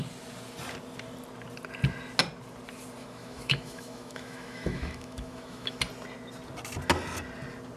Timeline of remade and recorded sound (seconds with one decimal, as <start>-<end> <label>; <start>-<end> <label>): 0.0-3.0 recorded; 3.0-5.8 remade; 5.8-7.8 recorded